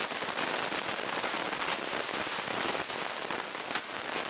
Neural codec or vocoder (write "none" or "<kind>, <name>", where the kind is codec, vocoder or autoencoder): none